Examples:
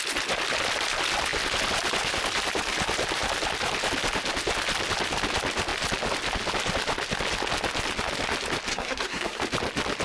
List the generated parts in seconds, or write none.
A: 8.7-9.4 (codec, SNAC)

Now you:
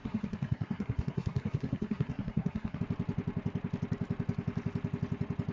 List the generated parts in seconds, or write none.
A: 0.0-2.8 (codec, SNAC)